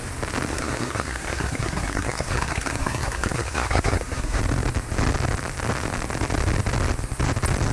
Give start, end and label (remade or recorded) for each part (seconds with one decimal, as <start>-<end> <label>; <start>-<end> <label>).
0.0-0.5 recorded; 0.5-4.4 remade; 4.4-7.7 recorded